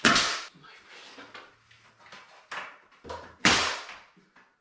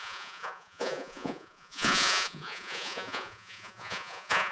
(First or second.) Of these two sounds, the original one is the first